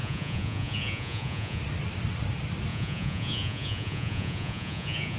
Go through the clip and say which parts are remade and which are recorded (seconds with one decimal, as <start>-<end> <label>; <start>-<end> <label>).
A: 0.0-1.6 remade; 1.6-2.7 recorded; 2.7-5.2 remade